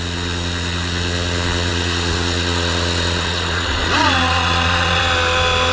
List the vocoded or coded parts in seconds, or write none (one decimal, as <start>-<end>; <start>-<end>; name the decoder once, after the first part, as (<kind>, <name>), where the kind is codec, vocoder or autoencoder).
1.7-5.0 (vocoder, Vocos)